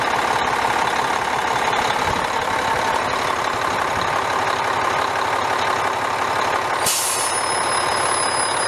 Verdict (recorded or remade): recorded